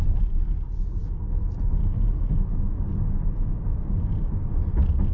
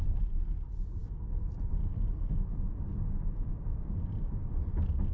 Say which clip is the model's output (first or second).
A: second